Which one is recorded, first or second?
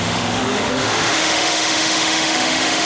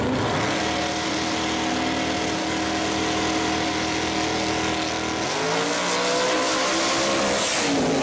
second